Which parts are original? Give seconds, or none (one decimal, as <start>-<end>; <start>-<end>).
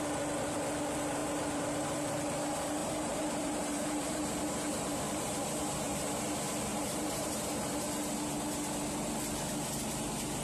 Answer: 0.0-1.2; 2.0-2.8; 6.2-6.7; 7.8-10.4